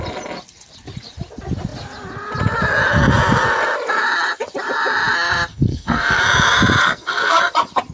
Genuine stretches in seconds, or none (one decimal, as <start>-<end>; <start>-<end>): 0.0-5.5; 6.2-6.8; 7.4-7.9